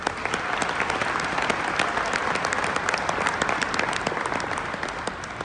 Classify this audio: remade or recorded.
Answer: recorded